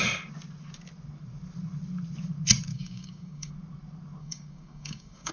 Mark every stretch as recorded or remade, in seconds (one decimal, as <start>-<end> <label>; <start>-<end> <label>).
0.0-2.7 recorded; 2.7-3.5 remade; 3.5-4.2 recorded; 4.2-5.3 remade